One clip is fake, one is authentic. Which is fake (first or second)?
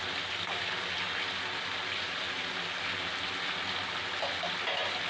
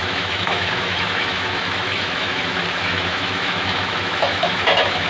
second